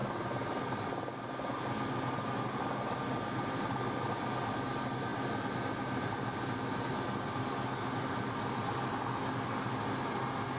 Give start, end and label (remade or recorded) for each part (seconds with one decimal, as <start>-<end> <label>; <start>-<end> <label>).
0.0-10.6 recorded